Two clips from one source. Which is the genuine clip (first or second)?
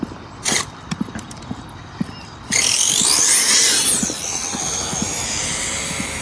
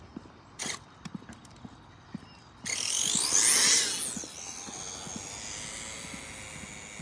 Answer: second